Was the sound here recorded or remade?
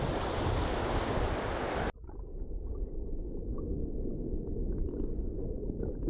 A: recorded